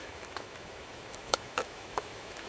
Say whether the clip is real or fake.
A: fake